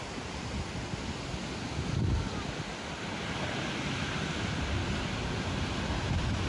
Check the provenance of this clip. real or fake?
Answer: real